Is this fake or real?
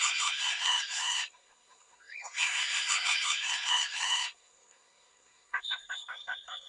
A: fake